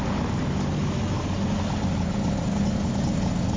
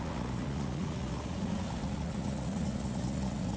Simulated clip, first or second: second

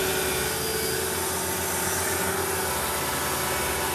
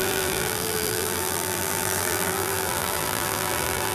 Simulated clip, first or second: second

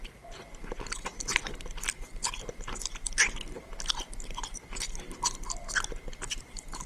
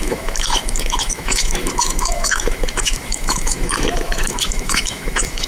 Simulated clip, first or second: second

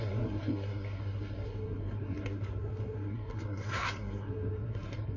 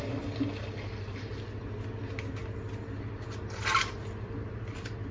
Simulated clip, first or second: first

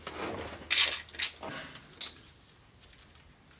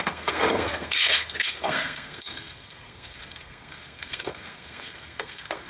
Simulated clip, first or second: second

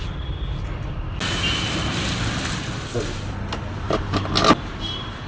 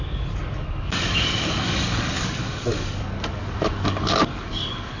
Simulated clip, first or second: second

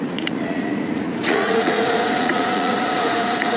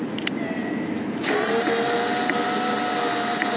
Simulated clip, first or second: first